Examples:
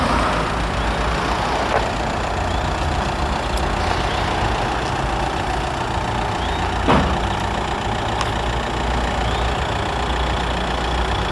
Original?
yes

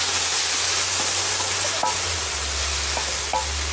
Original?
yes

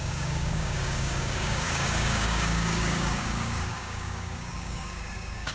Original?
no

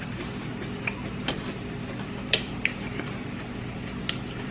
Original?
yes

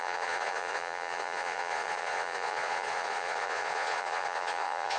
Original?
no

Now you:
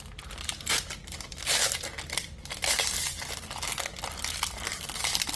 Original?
yes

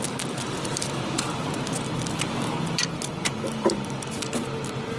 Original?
yes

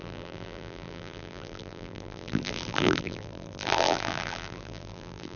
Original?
no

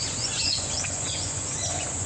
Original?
no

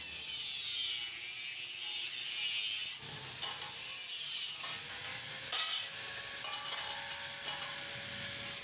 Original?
yes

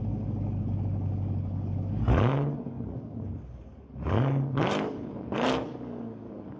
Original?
no